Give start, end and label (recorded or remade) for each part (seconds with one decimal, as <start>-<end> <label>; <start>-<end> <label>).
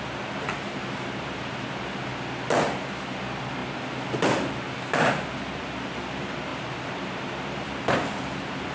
0.0-8.7 recorded